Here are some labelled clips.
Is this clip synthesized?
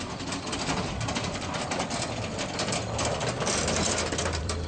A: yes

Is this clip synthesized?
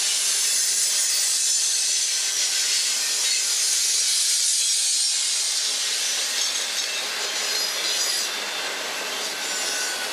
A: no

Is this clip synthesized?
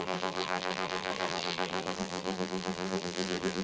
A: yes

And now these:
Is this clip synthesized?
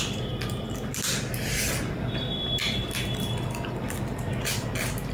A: no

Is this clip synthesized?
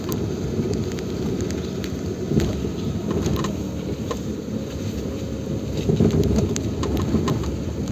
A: no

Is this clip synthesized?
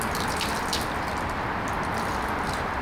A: yes